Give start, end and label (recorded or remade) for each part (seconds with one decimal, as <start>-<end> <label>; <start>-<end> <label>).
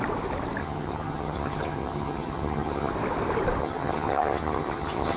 0.0-0.6 recorded; 0.6-2.9 remade; 2.9-3.6 recorded; 3.6-5.2 remade